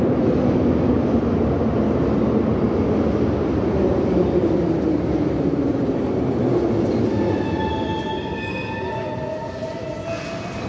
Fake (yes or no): no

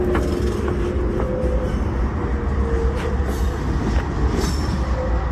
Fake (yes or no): no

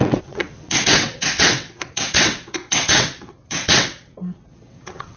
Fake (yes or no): yes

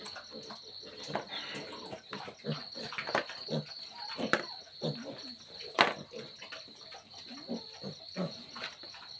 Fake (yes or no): no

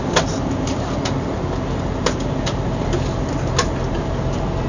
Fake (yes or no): no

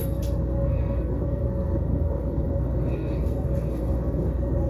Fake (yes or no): yes